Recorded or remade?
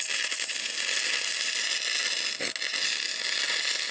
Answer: recorded